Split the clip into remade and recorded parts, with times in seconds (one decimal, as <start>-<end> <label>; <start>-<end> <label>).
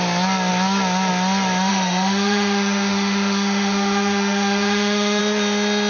0.0-1.7 recorded; 1.7-5.2 remade; 5.2-5.9 recorded